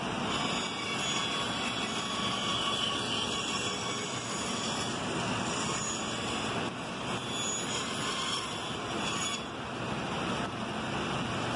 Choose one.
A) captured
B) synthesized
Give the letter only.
A